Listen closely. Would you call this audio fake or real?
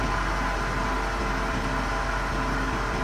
real